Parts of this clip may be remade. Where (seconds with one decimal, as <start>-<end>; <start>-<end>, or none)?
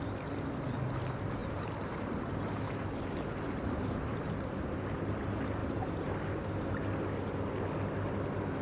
1.4-4.8; 5.6-6.7